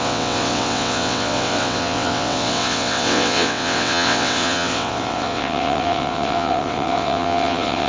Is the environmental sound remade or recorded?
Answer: remade